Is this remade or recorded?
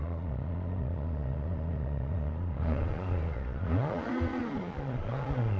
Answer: remade